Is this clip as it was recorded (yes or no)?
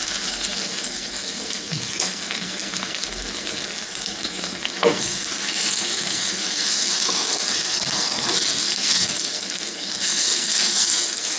no